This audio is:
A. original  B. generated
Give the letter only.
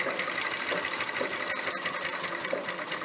A